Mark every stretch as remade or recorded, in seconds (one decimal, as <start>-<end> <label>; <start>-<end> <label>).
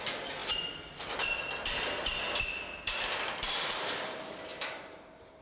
0.0-5.4 recorded